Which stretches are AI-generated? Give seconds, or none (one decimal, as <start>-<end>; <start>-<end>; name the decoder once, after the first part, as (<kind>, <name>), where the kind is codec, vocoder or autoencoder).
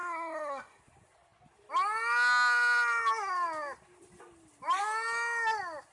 0.0-0.8 (codec, SNAC)